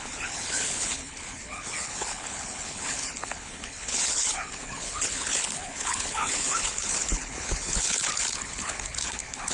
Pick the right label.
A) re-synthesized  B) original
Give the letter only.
A